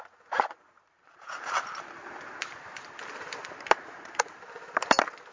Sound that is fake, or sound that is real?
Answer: fake